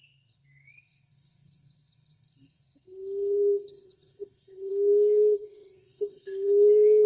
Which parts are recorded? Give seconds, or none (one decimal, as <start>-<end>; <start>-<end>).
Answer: none